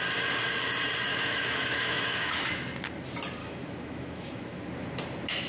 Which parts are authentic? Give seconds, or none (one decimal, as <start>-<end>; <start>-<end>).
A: 0.0-1.1; 2.5-3.4; 4.6-5.5